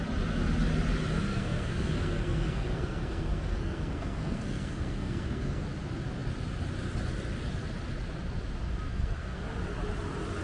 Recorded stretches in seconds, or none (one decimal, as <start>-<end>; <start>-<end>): 0.0-1.3; 5.6-8.9; 9.4-10.4